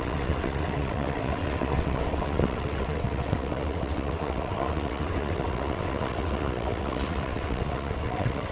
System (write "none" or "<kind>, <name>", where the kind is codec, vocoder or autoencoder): vocoder, WaveNeXt